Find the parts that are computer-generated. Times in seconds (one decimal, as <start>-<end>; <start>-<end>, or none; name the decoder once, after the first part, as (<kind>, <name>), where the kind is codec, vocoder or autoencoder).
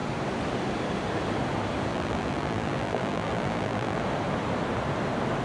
1.9-4.0 (vocoder, BigVGAN v2)